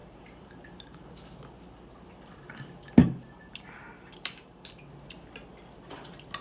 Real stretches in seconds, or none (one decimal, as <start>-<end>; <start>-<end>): 1.1-3.0; 4.9-6.4